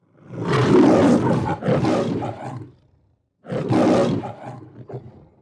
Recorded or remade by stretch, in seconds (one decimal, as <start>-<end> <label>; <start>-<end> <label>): 0.0-5.4 recorded